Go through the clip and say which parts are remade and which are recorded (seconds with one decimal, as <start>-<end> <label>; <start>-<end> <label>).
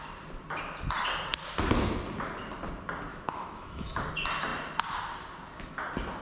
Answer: 0.0-3.1 recorded; 3.1-4.1 remade; 4.1-6.2 recorded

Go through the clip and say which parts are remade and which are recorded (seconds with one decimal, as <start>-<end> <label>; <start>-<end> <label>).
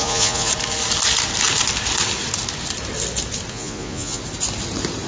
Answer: 0.0-0.5 remade; 0.5-3.5 recorded; 3.5-4.2 remade; 4.2-5.1 recorded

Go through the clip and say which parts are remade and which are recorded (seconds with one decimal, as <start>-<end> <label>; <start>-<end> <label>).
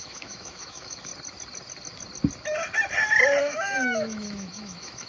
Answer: 0.0-1.1 remade; 1.1-3.4 recorded; 3.4-5.1 remade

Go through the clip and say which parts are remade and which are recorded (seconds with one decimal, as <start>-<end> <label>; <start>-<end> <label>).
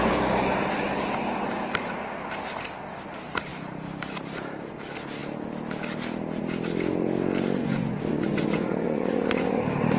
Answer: 0.0-7.6 recorded; 7.6-9.6 remade; 9.6-10.0 recorded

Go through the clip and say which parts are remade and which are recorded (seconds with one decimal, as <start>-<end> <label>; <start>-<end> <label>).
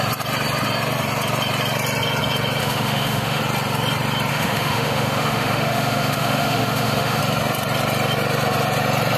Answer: 0.0-2.6 recorded; 2.6-3.4 remade; 3.4-4.3 recorded; 4.3-7.2 remade; 7.2-9.2 recorded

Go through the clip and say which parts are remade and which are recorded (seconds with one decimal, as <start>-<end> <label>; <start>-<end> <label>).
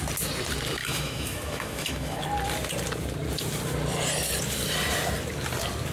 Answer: 0.0-0.8 recorded; 0.8-2.2 remade; 2.2-5.9 recorded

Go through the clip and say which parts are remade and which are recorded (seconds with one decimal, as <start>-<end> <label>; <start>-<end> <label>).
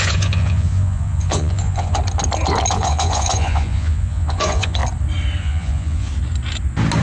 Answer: 0.0-2.0 remade; 2.0-2.7 recorded; 2.7-4.8 remade; 4.8-5.4 recorded; 5.4-6.1 remade; 6.1-7.0 recorded